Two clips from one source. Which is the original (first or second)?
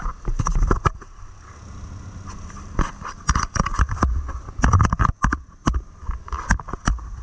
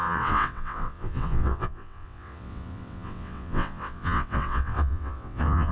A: first